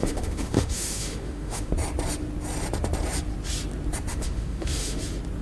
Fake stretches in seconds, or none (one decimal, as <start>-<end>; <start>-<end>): 0.0-1.7; 4.1-5.0